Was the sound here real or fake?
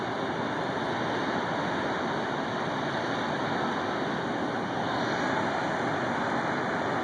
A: real